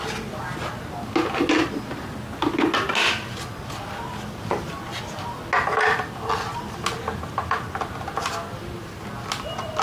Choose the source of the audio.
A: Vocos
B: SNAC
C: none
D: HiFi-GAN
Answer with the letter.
C